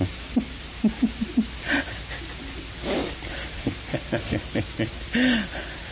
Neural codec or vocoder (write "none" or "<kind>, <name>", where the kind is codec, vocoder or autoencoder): none